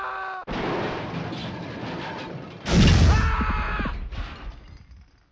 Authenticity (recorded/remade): recorded